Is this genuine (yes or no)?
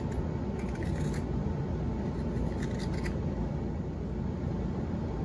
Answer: yes